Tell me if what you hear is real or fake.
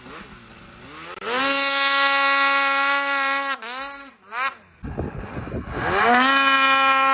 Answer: real